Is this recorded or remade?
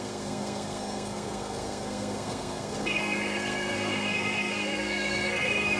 remade